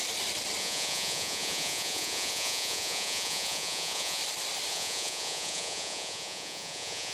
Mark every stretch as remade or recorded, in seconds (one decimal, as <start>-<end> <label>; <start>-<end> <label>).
0.0-0.6 recorded; 0.6-4.2 remade; 4.2-4.7 recorded; 4.7-7.1 remade